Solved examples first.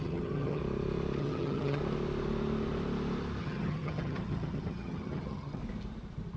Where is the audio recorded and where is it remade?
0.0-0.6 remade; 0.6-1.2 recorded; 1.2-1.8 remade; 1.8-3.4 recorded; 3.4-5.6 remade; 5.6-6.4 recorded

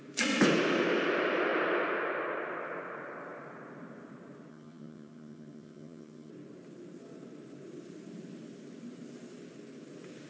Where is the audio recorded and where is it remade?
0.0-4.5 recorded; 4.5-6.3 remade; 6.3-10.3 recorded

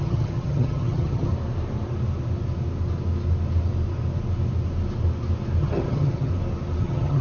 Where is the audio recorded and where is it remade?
0.0-1.3 remade; 1.3-5.6 recorded; 5.6-6.3 remade; 6.3-6.8 recorded; 6.8-7.2 remade